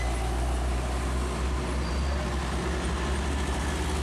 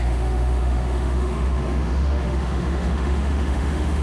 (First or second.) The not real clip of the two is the second